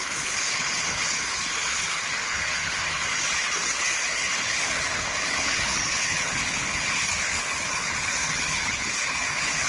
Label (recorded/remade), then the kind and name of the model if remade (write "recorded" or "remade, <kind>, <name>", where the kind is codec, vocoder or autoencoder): remade, codec, HILCodec